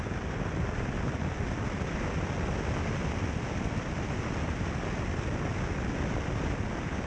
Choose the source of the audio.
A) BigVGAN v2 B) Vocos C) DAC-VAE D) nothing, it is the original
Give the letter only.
D